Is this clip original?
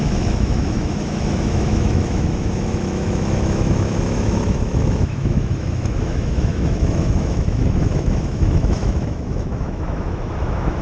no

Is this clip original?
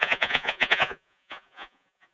no